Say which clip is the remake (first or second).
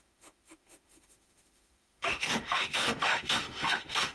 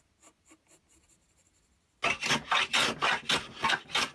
first